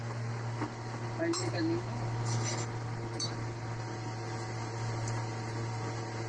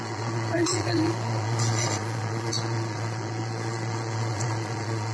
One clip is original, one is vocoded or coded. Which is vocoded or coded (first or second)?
second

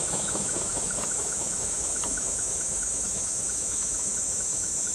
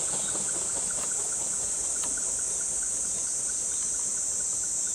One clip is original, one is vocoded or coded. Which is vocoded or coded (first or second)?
first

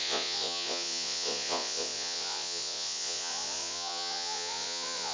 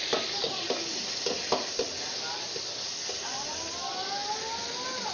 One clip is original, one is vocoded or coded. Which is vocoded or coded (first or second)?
first